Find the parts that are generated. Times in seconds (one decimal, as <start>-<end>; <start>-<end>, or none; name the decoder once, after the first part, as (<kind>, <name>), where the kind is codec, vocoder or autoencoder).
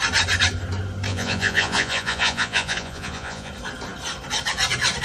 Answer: 1.1-3.5 (vocoder, Vocos)